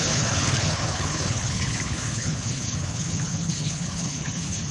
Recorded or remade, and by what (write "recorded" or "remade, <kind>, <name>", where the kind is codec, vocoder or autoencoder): remade, codec, HILCodec